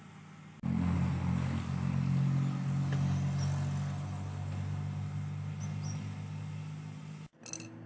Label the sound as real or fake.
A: real